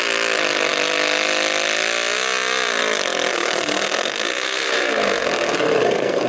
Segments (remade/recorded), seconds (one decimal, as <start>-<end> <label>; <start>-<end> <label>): 0.0-3.3 recorded; 3.3-6.3 remade